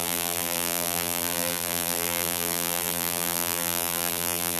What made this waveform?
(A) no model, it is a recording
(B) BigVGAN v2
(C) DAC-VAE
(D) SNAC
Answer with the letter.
B